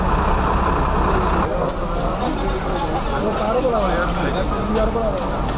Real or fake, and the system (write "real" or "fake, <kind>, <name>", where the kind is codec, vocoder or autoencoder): real